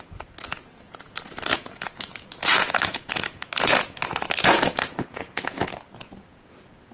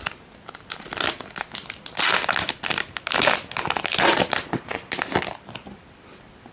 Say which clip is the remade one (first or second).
first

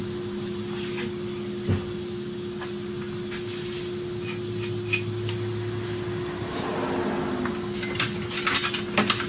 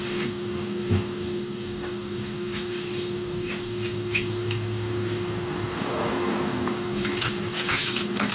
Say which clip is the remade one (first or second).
second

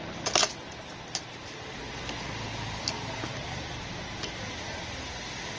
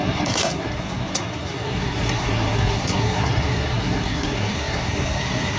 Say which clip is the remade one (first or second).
second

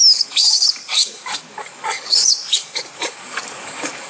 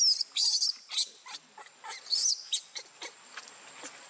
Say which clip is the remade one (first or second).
first